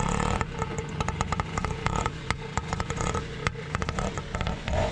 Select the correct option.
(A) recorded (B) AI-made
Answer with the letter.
B